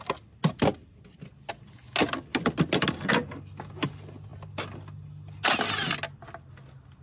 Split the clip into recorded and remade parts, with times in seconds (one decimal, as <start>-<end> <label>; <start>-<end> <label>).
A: 0.0-7.0 recorded